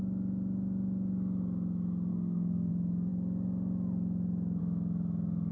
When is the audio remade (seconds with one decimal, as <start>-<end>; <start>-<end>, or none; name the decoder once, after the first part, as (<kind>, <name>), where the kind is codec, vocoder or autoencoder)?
2.1-2.7 (codec, SNAC)